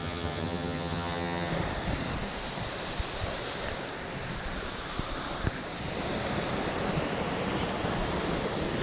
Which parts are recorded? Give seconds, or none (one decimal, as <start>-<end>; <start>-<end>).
1.5-8.8